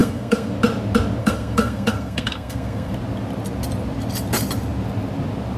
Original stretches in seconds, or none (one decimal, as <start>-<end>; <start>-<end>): 0.5-1.2; 2.9-5.6